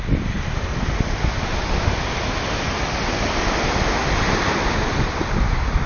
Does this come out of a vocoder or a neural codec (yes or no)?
no